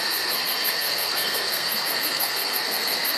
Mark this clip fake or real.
fake